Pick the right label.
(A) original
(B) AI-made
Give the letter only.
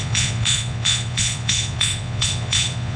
B